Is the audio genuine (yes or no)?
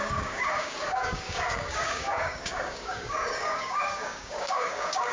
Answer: no